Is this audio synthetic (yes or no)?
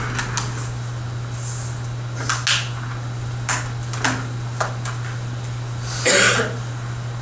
no